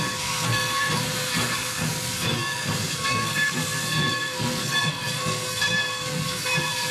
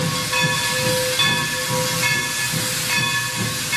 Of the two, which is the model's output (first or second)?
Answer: first